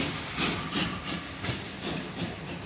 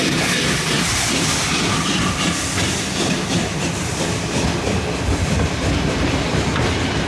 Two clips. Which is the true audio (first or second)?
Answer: first